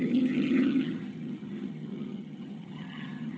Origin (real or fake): fake